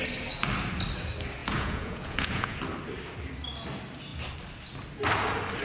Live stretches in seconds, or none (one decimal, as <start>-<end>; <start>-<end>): 0.0-1.4; 2.6-5.6